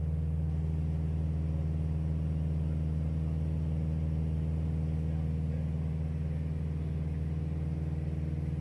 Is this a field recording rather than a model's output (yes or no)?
yes